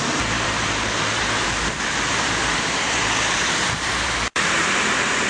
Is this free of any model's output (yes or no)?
no